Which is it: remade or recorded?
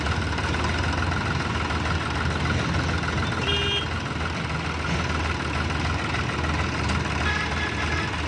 recorded